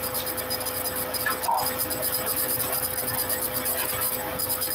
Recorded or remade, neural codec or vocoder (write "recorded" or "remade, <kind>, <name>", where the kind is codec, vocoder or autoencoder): recorded